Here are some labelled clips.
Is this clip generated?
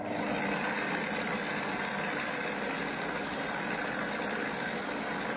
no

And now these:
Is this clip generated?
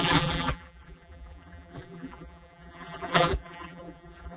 yes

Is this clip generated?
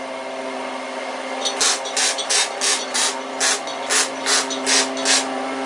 no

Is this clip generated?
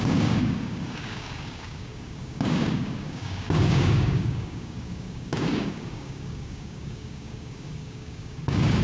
yes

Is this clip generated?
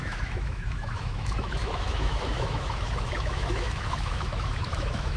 yes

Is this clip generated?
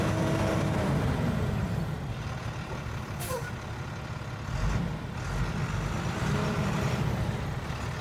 no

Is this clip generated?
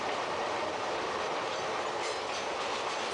no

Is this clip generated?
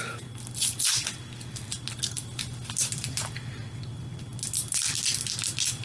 no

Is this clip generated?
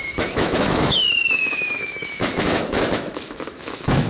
yes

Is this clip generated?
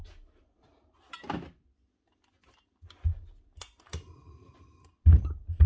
no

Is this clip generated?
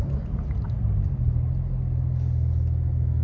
no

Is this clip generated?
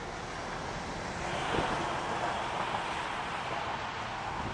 no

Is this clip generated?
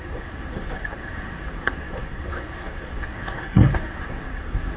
yes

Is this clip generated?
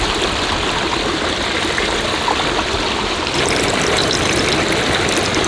no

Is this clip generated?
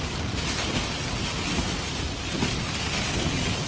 no